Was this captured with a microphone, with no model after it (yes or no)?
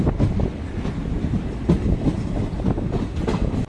yes